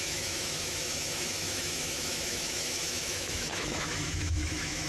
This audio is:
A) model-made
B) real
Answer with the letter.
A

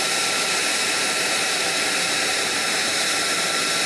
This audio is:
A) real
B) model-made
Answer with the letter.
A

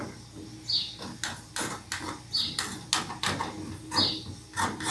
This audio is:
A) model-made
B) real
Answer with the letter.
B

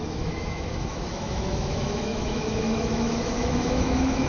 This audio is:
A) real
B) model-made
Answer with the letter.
B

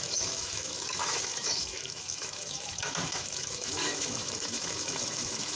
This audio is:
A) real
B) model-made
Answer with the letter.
B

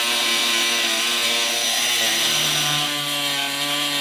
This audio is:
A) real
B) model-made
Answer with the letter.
A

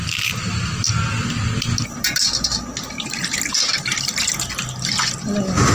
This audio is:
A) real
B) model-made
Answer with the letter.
A